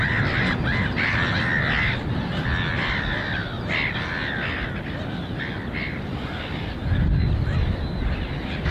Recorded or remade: recorded